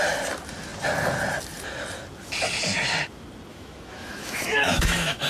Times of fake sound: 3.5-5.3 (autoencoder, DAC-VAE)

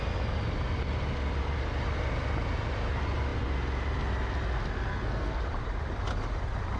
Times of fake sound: 4.9-5.4 (codec, SNAC)

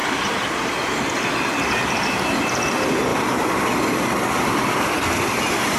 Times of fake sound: 1.9-3.1 (vocoder, BigVGAN v2); 4.4-5.8

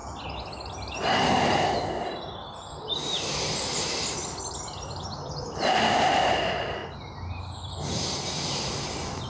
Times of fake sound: 1.9-6.8 (vocoder, BigVGAN v2); 7.4-9.3

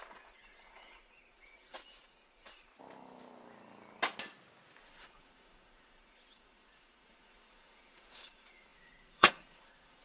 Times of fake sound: 0.0-2.7 (vocoder, Vocos); 4.8-10.0